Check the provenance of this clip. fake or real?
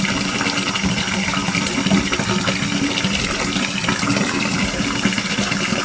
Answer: real